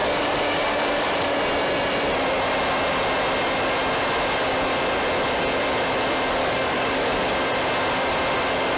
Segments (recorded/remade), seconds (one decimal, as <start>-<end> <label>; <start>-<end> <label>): 0.0-1.4 remade; 1.4-6.4 recorded; 6.4-7.2 remade; 7.2-8.8 recorded